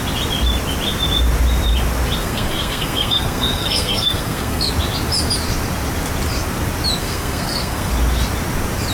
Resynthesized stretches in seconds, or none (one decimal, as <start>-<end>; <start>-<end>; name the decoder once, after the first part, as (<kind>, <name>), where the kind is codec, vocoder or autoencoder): 2.2-4.7 (codec, SNAC); 7.0-7.9